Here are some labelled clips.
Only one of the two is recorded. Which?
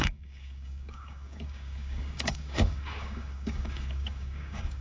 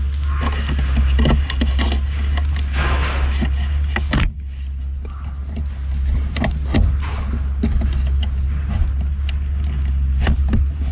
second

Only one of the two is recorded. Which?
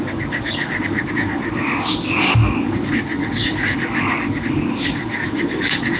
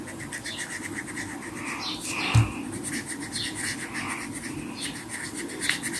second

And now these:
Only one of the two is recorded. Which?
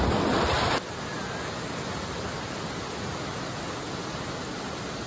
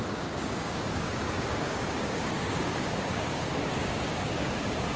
first